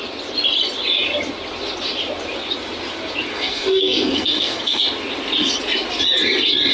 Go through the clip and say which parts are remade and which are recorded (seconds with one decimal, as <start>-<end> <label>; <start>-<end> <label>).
0.0-3.3 recorded; 3.3-4.8 remade; 4.8-6.7 recorded